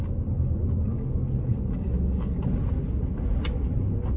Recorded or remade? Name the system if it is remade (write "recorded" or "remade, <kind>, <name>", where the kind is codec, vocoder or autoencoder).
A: recorded